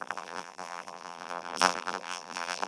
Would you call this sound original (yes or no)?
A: no